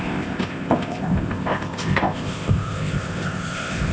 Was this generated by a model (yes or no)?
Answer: yes